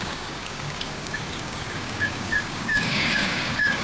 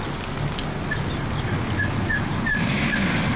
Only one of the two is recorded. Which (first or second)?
second